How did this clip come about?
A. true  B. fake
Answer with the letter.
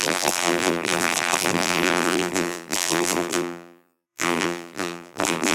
B